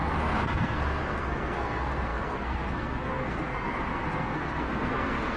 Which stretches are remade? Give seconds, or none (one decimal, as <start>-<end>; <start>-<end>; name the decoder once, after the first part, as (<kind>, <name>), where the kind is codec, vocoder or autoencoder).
0.0-5.4 (codec, SNAC)